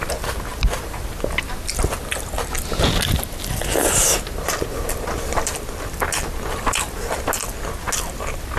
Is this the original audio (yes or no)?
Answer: yes